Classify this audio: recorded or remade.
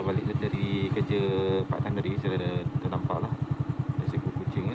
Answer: recorded